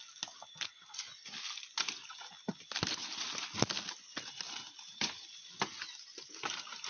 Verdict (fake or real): real